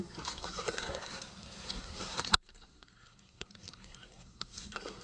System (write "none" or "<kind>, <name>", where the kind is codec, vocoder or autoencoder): codec, SNAC